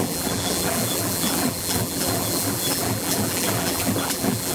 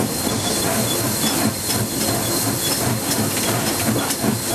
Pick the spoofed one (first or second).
first